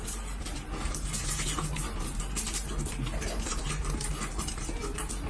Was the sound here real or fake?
real